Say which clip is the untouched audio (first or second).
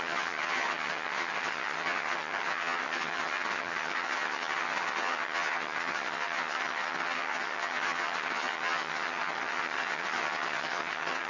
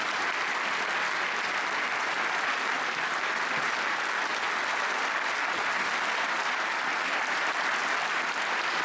second